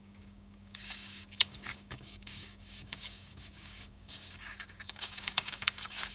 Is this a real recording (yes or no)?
no